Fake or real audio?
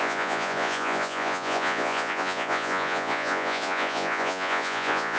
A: fake